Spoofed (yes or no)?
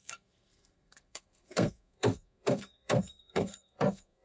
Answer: yes